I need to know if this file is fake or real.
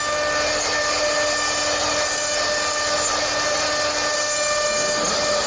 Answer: real